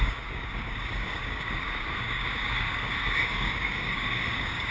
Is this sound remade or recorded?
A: remade